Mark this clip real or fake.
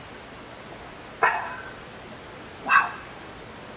real